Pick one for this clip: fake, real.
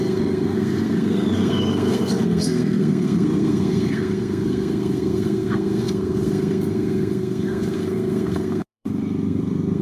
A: fake